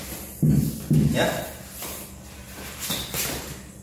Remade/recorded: recorded